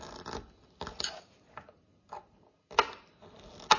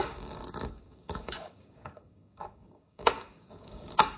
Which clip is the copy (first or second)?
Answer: second